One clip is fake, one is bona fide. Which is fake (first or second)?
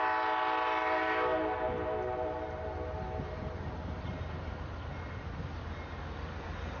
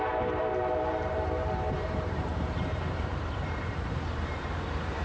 second